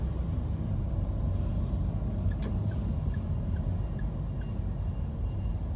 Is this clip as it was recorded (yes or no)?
yes